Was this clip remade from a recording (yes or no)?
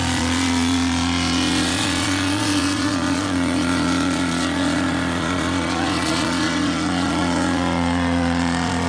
yes